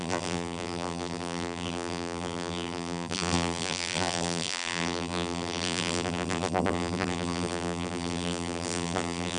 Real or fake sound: fake